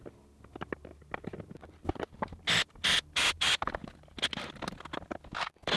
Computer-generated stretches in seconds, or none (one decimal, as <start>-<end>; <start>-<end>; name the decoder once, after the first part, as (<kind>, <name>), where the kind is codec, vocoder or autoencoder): none